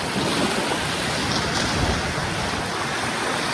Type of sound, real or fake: real